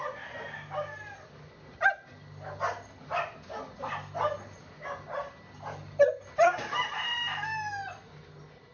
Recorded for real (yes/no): yes